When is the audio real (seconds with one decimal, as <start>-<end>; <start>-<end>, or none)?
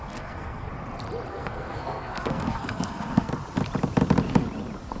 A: 0.7-1.3; 3.3-5.0